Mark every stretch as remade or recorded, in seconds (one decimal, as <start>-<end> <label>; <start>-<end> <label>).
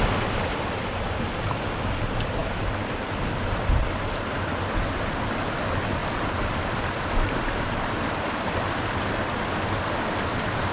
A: 0.0-6.0 recorded; 6.0-9.6 remade; 9.6-10.7 recorded